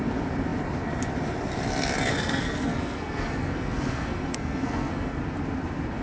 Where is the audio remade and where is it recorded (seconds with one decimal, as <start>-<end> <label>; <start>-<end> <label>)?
0.0-2.1 recorded; 2.1-5.2 remade; 5.2-6.0 recorded